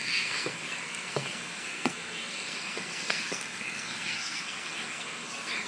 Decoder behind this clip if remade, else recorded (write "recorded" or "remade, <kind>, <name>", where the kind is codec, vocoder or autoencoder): remade, codec, SNAC